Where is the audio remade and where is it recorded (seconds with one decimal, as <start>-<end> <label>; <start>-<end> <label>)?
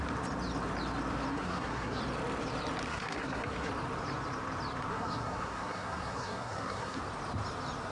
0.0-1.3 recorded; 1.3-2.0 remade; 2.0-2.9 recorded; 2.9-3.7 remade; 3.7-4.9 recorded; 4.9-7.0 remade; 7.0-7.9 recorded